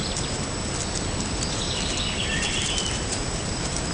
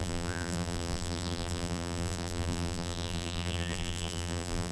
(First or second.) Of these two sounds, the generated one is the second